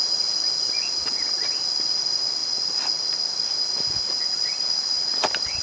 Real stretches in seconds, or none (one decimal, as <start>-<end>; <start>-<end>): 0.0-5.6